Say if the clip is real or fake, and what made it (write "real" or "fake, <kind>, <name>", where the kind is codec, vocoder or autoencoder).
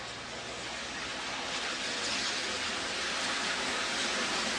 real